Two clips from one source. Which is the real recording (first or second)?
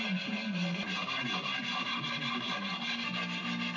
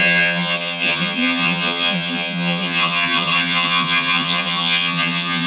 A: first